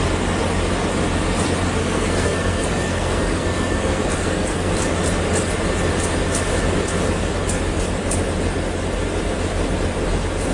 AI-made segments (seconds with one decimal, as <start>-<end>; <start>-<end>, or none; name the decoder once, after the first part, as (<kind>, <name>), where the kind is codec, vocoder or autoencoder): 1.8-4.7 (codec, SNAC)